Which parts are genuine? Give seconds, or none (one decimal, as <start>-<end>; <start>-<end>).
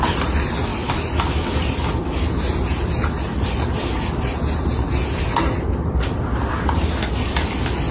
0.0-7.9